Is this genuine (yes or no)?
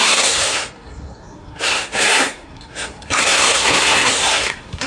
no